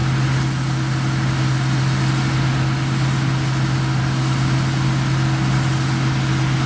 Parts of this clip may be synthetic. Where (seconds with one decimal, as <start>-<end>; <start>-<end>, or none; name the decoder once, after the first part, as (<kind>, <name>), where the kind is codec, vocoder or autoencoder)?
none